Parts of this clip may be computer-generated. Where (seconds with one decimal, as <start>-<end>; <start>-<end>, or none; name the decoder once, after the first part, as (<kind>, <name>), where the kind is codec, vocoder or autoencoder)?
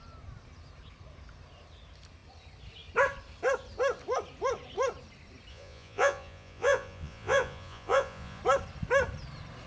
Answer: 5.5-8.4 (vocoder, Vocos)